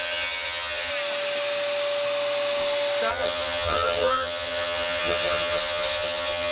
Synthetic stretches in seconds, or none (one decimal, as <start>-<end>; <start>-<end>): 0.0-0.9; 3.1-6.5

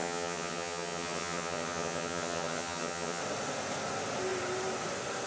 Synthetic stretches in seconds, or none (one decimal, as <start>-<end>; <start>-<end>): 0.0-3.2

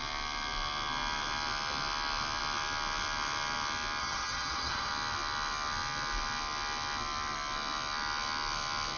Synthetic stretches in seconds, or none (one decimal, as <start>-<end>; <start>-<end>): 4.0-4.9

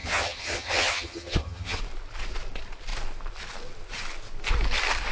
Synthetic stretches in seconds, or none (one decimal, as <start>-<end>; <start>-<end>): 0.0-1.8

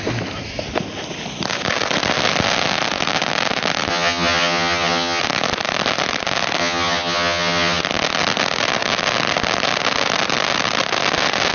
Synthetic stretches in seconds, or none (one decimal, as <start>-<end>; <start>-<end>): 3.9-5.2; 6.6-7.8

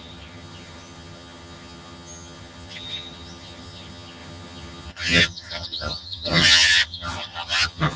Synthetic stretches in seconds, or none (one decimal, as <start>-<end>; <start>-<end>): 0.0-8.0